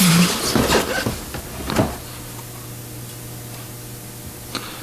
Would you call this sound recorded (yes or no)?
yes